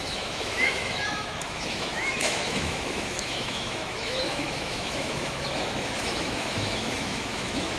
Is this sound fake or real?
fake